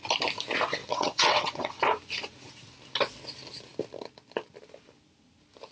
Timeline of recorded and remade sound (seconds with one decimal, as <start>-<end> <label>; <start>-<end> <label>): 0.0-0.8 recorded; 0.8-1.8 remade; 1.8-5.7 recorded